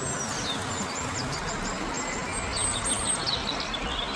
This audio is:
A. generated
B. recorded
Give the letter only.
B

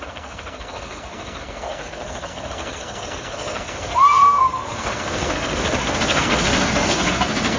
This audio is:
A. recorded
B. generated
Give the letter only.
B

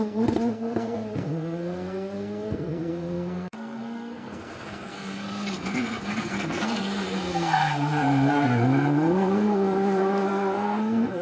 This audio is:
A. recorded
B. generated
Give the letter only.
B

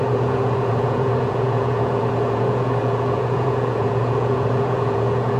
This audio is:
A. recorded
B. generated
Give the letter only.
B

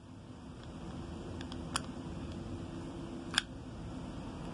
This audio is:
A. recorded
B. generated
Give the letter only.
A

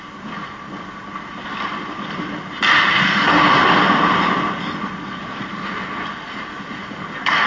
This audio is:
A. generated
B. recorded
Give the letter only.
B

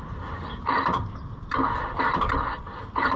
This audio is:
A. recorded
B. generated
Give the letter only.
A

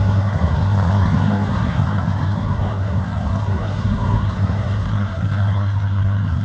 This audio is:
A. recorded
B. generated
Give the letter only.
B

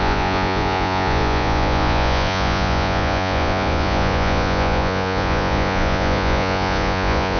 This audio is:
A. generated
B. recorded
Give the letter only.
A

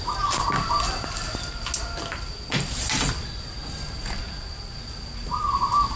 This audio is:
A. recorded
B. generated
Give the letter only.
A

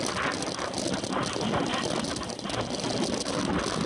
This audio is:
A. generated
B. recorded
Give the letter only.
B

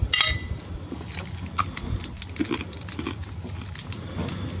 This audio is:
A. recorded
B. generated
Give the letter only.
A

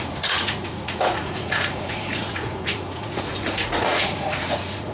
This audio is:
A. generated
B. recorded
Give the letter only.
A